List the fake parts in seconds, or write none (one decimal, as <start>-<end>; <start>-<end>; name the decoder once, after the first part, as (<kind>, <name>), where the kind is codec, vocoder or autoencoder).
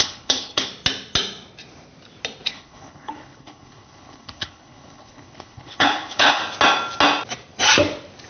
0.0-0.7 (codec, HILCodec); 2.5-6.4